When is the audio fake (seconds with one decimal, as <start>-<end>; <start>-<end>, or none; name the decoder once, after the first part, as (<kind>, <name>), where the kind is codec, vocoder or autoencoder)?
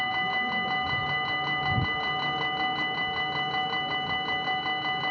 none